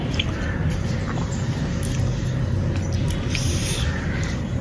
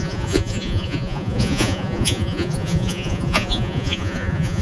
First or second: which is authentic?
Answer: first